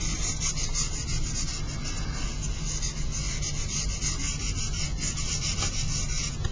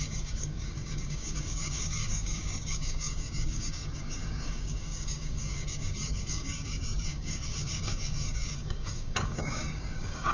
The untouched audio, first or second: first